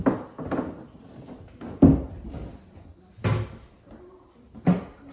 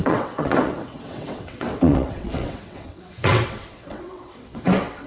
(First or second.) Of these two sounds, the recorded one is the first